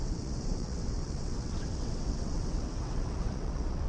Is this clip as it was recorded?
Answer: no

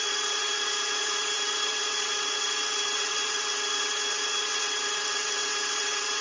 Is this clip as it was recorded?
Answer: no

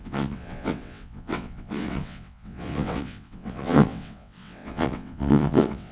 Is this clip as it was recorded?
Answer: no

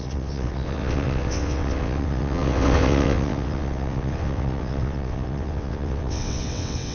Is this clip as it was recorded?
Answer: no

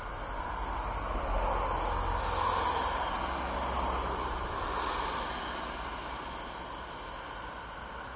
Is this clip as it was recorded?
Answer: yes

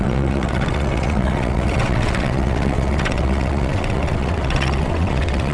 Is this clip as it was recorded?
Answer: no